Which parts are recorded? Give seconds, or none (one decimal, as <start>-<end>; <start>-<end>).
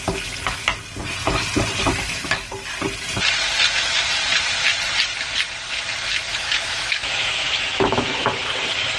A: 0.0-1.9; 2.5-6.3; 8.4-9.0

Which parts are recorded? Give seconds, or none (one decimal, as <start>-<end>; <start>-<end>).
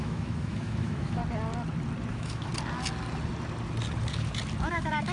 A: 1.2-2.1; 2.5-4.6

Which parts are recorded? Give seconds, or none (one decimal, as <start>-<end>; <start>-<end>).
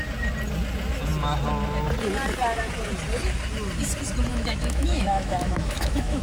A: 0.0-4.3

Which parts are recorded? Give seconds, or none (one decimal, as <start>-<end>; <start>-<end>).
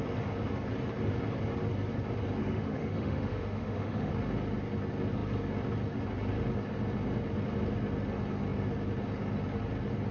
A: 0.0-2.4; 4.1-10.1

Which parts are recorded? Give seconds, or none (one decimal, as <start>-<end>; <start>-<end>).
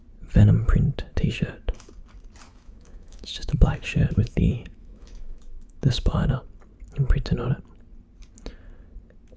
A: 0.0-1.1; 1.9-2.5; 6.4-9.4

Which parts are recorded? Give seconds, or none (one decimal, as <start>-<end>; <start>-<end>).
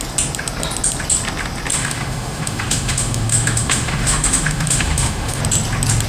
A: 0.0-1.7; 5.4-6.1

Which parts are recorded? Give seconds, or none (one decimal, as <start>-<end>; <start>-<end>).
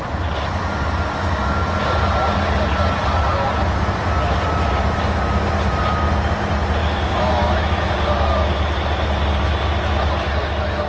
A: 0.0-6.8; 7.9-10.9